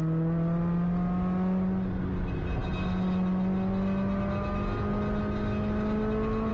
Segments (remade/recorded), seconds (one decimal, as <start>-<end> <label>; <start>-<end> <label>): 0.0-6.5 recorded